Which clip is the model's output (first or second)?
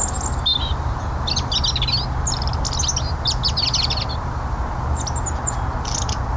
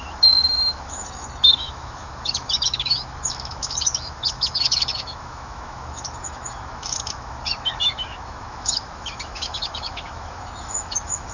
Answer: second